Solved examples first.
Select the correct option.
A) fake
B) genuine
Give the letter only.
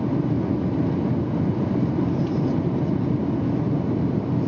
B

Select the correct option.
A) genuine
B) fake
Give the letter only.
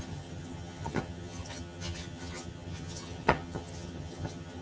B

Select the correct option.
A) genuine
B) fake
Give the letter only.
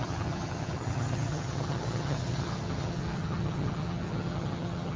B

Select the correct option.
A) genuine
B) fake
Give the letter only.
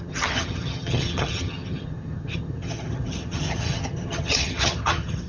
B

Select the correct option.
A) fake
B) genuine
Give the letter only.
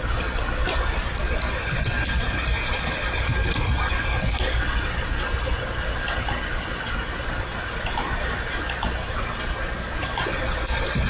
B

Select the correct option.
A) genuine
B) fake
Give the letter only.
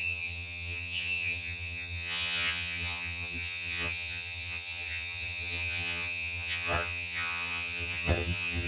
B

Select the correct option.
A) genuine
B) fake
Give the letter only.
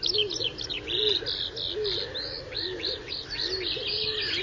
A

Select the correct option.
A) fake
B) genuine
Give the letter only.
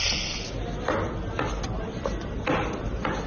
B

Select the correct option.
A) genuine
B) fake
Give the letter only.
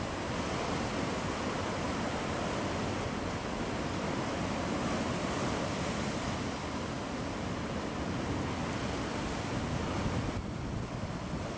A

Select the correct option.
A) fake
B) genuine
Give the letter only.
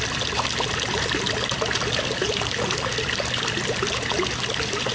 B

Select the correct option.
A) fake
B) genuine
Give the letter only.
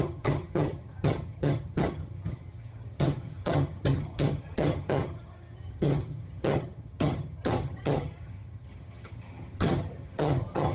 A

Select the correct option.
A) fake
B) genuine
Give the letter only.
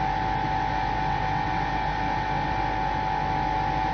B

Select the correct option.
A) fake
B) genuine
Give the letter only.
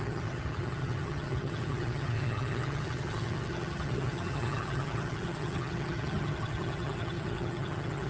A